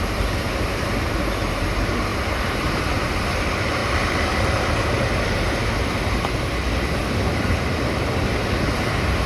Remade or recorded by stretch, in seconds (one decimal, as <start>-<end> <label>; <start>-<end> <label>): 0.0-3.8 remade; 3.8-4.3 recorded; 4.3-9.3 remade

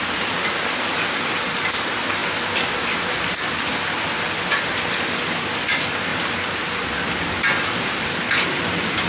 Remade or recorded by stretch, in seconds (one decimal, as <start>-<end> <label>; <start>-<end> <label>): 0.0-2.2 remade; 2.2-3.0 recorded; 3.0-3.7 remade; 3.7-4.7 recorded; 4.7-6.1 remade; 6.1-7.2 recorded; 7.2-9.1 remade